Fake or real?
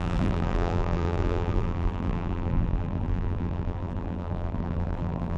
fake